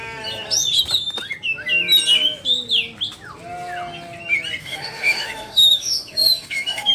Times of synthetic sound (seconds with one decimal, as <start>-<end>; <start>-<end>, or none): 4.6-6.9